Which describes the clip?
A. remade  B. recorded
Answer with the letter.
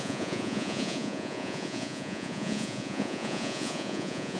A